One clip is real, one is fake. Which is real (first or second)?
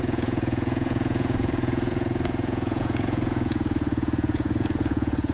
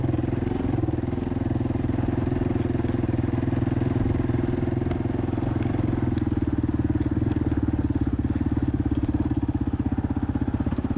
second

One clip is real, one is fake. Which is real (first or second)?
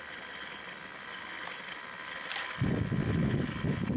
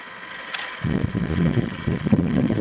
first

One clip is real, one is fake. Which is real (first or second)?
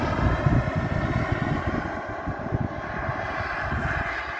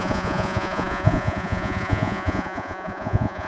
first